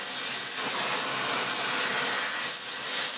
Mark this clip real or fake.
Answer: real